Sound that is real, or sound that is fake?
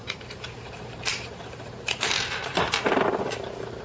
fake